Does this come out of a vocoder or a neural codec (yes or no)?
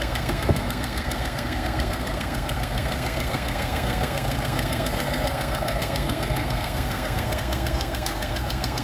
yes